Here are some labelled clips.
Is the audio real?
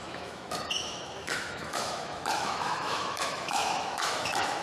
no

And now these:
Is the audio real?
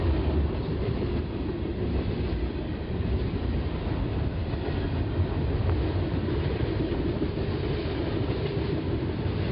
yes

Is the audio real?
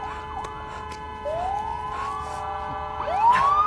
yes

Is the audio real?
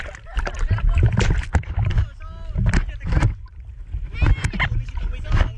yes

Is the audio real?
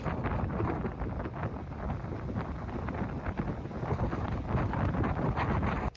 yes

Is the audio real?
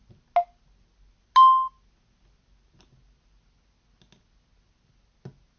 yes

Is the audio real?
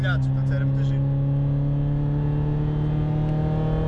yes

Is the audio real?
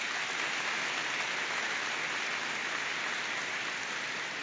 yes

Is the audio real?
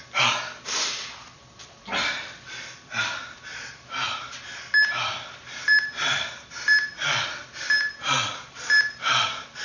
yes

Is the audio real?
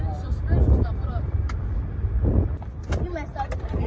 yes